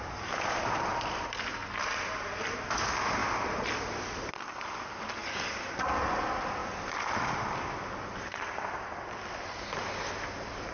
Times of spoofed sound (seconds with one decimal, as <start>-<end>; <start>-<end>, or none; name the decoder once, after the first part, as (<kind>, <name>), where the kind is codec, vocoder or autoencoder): 3.2-4.3 (vocoder, BigVGAN v2); 6.6-10.7

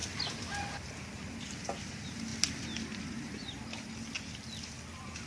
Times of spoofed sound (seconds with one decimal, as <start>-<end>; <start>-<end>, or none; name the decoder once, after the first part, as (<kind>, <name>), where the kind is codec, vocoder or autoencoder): 0.0-1.4 (vocoder, BigVGAN v2)

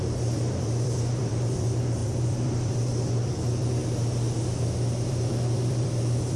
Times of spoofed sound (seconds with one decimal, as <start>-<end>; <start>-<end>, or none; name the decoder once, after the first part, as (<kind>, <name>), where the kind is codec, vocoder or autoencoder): 0.0-3.8 (vocoder, BigVGAN v2); 5.0-6.4

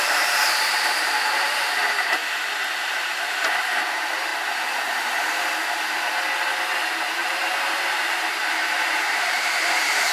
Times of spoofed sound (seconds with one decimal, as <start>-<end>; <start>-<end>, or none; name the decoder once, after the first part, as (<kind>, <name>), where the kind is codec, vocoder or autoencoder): 0.0-2.2 (vocoder, BigVGAN v2); 2.8-4.3; 6.8-10.1

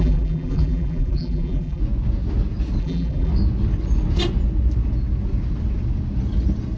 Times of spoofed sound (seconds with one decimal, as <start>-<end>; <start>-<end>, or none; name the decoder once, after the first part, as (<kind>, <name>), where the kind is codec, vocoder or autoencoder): 0.0-1.8 (vocoder, BigVGAN v2); 2.8-3.3

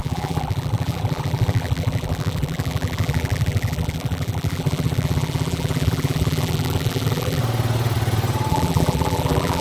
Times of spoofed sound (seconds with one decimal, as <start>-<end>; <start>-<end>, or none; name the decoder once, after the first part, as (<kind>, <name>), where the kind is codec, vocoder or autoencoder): 0.0-7.4 (vocoder, BigVGAN v2); 8.5-9.6

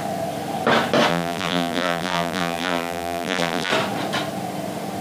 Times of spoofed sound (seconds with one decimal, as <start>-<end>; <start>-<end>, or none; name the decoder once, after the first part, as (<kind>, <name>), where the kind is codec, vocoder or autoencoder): 1.1-3.7 (vocoder, BigVGAN v2)

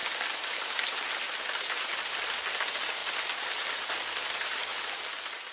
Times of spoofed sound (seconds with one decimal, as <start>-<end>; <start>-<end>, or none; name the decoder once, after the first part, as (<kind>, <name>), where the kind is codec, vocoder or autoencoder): 0.0-5.5 (vocoder, BigVGAN v2)